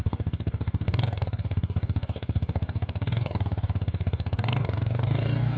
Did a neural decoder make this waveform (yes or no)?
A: yes